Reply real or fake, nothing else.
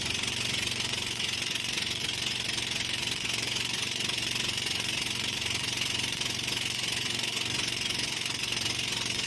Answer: fake